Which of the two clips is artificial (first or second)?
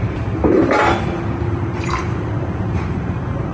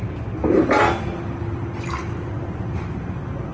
first